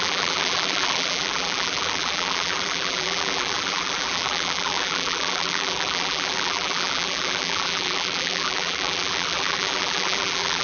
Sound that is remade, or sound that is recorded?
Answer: remade